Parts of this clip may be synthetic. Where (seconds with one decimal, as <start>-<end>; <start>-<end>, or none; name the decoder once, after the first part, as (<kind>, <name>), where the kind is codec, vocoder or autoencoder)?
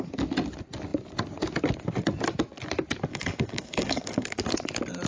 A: 3.1-4.4 (codec, DAC)